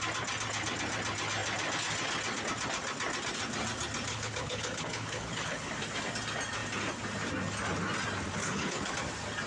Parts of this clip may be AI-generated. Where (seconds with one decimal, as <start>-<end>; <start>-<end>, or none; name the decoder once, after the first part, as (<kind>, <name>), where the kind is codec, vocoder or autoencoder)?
4.1-5.7 (codec, HILCodec); 8.4-8.9